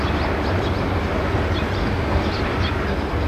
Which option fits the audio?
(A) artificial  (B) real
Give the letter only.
B